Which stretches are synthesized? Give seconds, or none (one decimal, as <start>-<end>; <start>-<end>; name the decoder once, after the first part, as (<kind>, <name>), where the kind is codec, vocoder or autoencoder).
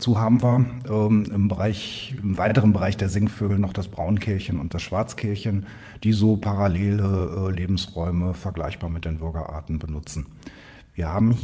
0.0-2.5 (vocoder, WaveNeXt); 3.5-11.4